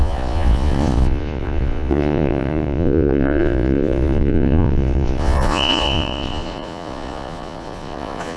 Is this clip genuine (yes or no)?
no